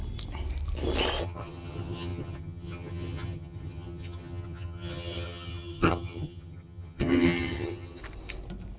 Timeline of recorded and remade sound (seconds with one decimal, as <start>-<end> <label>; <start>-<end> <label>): 0.0-1.2 recorded; 1.2-8.0 remade; 8.0-8.8 recorded